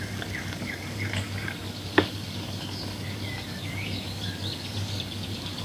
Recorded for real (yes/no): no